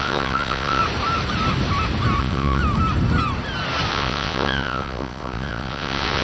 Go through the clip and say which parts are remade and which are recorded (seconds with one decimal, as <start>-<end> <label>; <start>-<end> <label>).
0.0-0.8 remade; 0.8-2.2 recorded; 2.2-2.6 remade; 2.6-3.9 recorded; 3.9-6.2 remade